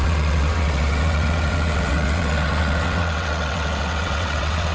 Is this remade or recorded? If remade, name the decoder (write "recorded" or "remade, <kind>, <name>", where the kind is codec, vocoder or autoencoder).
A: remade, vocoder, WaveNeXt